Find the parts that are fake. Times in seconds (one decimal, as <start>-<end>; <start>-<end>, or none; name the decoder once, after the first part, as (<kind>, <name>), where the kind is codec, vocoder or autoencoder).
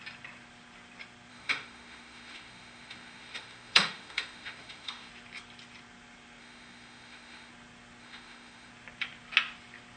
1.3-5.1 (autoencoder, DAC-VAE); 6.4-7.5; 8.0-8.7